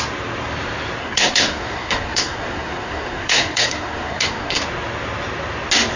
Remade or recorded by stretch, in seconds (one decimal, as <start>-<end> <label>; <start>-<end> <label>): 0.0-1.0 recorded; 1.0-4.6 remade; 4.6-6.0 recorded